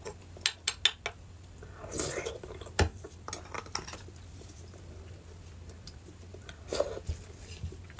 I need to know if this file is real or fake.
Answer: real